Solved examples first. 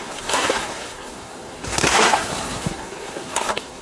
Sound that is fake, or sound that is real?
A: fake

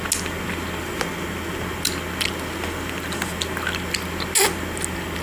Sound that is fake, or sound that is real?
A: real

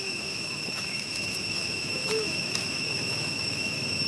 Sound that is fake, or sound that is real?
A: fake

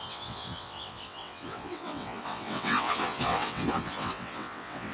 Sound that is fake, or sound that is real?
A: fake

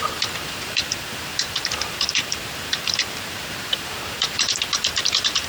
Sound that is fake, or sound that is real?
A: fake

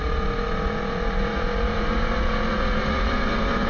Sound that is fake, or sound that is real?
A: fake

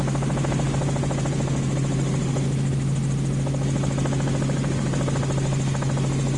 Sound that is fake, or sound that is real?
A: real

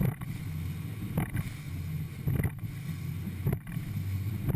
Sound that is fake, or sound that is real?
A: real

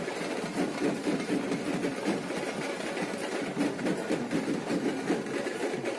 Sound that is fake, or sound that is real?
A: real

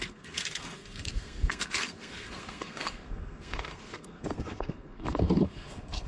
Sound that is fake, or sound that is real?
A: fake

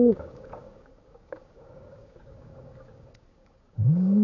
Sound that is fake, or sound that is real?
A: fake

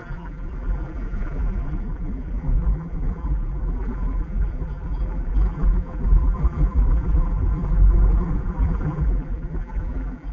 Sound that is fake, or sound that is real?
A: fake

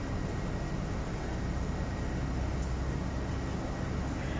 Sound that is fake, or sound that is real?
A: real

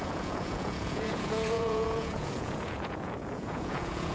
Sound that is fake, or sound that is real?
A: fake